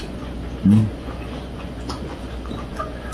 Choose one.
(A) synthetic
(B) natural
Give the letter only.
A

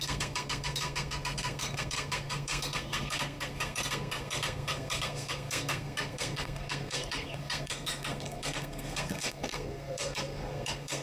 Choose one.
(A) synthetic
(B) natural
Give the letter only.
A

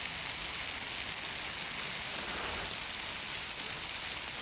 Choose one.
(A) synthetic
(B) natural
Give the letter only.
B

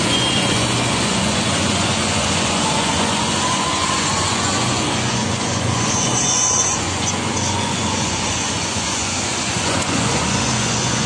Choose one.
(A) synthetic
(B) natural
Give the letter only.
A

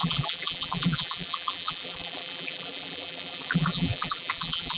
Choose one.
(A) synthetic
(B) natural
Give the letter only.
A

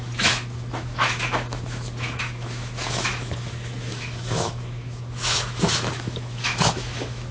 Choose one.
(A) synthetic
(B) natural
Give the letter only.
A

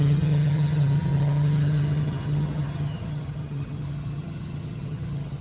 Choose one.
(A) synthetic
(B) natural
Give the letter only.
A